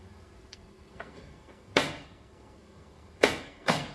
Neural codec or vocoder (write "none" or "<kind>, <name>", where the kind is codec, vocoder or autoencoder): codec, SNAC